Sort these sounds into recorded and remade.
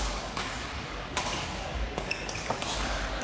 remade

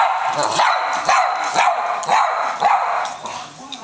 recorded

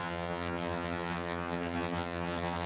remade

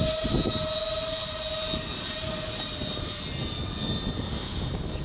recorded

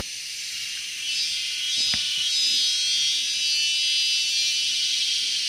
recorded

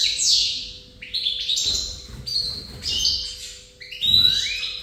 recorded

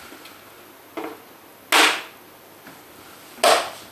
recorded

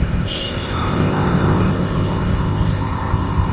remade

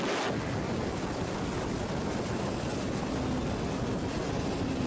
recorded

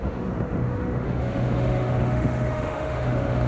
remade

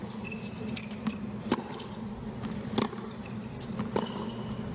recorded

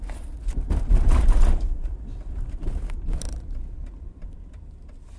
remade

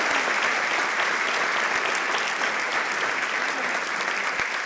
recorded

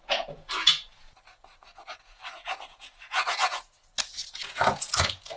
remade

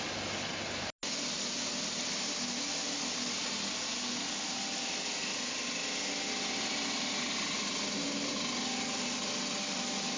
recorded